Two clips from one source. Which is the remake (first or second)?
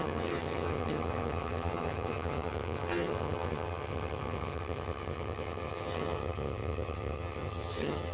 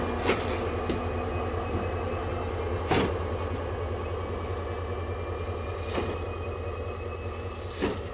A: first